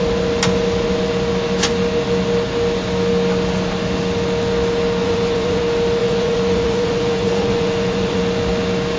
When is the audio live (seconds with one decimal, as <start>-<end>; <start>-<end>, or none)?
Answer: 0.0-5.0; 5.6-6.0; 8.2-9.0